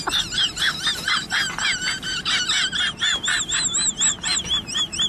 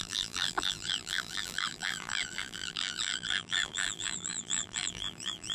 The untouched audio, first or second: first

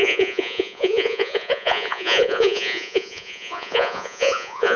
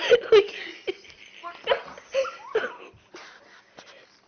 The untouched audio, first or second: second